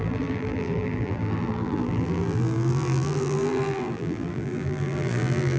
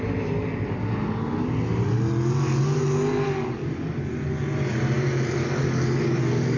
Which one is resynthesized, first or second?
first